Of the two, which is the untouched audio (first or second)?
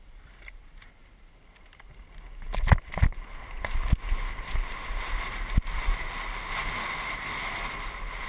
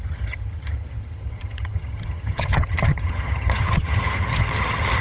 first